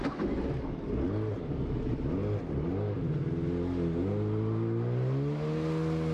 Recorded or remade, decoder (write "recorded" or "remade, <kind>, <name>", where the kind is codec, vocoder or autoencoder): recorded